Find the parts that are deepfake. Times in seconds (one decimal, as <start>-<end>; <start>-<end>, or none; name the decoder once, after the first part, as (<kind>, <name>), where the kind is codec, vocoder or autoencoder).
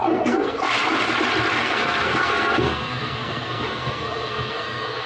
0.0-0.6 (codec, SNAC); 1.6-5.1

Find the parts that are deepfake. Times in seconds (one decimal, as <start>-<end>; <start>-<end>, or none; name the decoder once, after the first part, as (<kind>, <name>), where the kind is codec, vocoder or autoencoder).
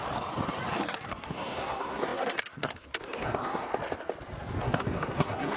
1.1-3.7 (codec, SNAC); 4.6-5.6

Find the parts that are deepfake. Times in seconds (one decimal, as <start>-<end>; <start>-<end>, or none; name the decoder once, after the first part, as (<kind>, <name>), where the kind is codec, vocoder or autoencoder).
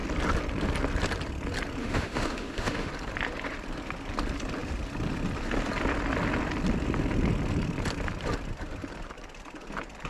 1.8-2.9 (autoencoder, DAC-VAE)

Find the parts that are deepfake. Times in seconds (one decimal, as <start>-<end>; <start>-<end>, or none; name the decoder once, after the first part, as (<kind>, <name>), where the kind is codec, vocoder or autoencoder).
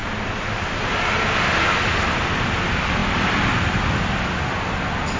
none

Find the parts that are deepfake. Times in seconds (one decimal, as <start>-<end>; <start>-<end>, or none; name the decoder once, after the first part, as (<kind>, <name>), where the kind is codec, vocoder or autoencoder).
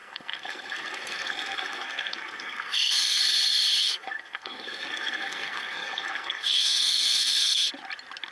0.0-3.2 (codec, SNAC); 3.8-7.7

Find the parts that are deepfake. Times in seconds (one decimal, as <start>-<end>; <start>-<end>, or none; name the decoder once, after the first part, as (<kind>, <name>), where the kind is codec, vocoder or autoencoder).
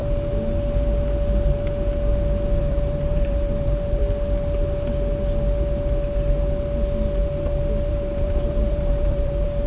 2.6-4.0 (vocoder, BigVGAN v2); 7.9-9.7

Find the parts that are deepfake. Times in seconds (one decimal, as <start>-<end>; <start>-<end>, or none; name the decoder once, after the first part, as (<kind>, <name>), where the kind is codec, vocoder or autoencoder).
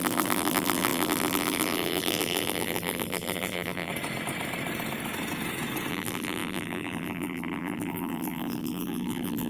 0.0-3.9 (vocoder, BigVGAN v2); 5.9-9.5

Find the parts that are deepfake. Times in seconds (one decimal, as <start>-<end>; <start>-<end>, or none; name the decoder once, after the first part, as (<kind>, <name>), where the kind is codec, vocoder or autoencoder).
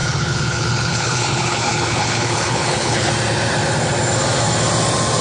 0.0-3.1 (codec, HILCodec)